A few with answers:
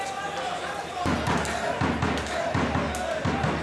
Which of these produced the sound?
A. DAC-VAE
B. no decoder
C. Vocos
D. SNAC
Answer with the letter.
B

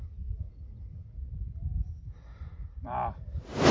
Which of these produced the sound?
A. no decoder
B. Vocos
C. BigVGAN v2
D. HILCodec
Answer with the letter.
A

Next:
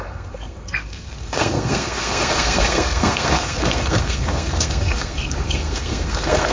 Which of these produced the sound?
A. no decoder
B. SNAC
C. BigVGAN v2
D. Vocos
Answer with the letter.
B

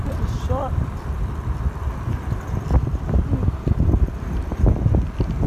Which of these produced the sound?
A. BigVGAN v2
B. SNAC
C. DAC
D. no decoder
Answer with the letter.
A